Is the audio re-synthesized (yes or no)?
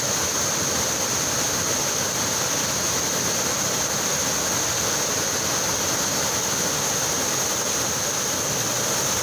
no